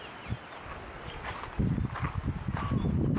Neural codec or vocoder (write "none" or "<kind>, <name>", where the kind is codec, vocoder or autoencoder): none